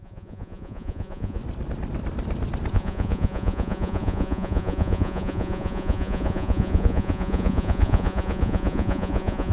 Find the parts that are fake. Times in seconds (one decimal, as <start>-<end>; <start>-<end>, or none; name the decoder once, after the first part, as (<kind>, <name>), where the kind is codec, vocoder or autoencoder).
0.0-1.4 (vocoder, Vocos); 2.7-9.5